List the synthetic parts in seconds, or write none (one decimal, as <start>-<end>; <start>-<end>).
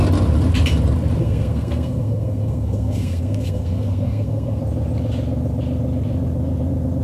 1.2-4.6